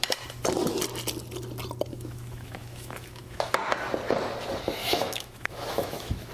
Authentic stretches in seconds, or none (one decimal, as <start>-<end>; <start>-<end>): 0.0-1.9; 3.5-4.8